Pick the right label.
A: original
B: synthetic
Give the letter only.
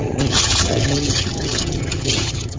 B